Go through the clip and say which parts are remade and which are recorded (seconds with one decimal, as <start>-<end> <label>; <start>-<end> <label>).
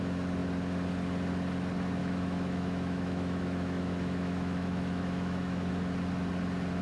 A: 0.0-2.0 recorded; 2.0-5.7 remade; 5.7-6.8 recorded